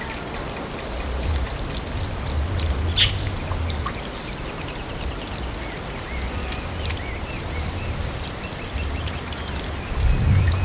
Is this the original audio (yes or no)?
yes